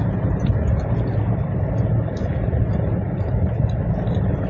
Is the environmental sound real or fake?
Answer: real